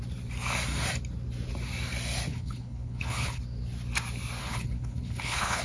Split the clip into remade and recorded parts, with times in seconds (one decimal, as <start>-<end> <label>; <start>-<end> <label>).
0.0-2.3 recorded; 2.3-3.4 remade; 3.4-4.4 recorded; 4.4-5.6 remade